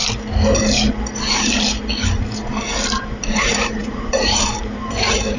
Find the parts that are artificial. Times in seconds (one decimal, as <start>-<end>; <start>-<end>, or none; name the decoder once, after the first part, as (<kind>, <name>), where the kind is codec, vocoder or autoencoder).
3.2-5.4 (vocoder, BigVGAN v2)